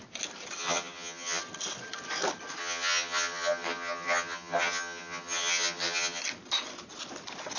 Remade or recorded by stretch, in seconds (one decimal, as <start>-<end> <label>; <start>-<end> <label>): 0.0-0.6 recorded; 0.6-1.4 remade; 1.4-2.6 recorded; 2.6-6.2 remade; 6.2-7.6 recorded